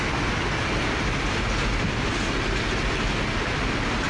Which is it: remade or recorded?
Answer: recorded